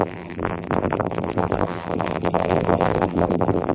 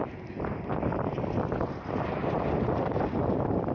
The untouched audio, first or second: second